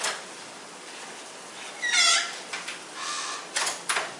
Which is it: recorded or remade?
recorded